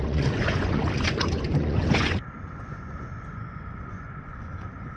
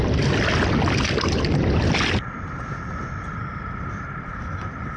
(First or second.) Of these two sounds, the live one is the second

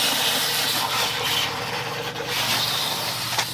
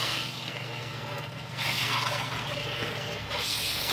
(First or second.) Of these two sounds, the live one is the first